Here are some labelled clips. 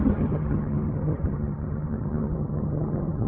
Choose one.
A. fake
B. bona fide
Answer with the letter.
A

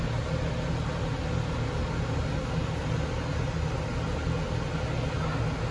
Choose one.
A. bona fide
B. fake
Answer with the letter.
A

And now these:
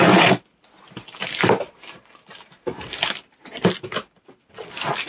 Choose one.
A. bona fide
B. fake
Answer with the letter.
A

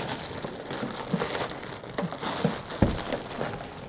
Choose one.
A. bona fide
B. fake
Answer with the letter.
A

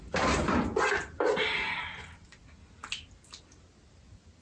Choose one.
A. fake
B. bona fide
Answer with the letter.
B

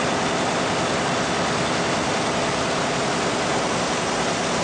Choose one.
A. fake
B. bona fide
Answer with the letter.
B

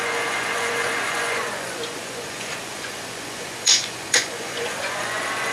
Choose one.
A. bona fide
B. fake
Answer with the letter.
B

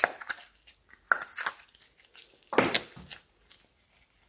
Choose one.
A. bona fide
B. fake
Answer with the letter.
A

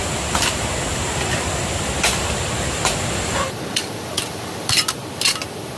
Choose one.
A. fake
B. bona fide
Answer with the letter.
A